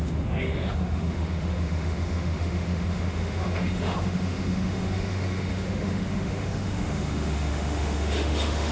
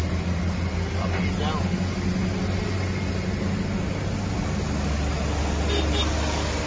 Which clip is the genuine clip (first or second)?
second